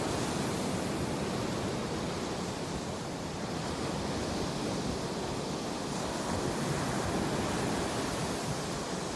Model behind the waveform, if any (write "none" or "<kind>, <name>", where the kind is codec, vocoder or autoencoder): none